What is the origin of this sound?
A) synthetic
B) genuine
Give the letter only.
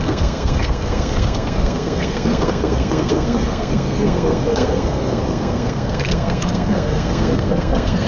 A